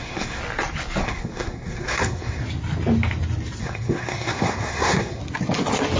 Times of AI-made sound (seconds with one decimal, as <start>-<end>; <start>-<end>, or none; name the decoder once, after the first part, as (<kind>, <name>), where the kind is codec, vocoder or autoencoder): 0.0-0.4 (codec, SNAC); 1.0-2.4; 3.6-5.2